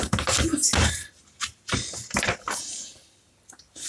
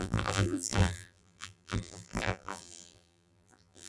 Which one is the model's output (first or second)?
second